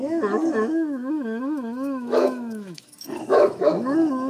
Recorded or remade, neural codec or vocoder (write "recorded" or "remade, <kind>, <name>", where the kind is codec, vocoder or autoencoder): remade, autoencoder, DAC-VAE